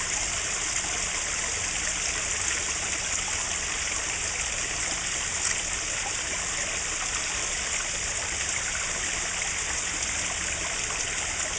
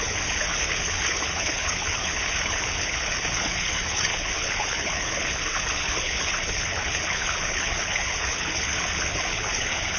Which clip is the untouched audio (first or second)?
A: first